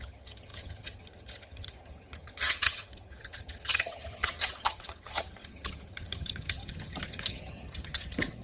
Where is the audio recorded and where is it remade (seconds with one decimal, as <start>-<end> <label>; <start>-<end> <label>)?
0.0-8.4 remade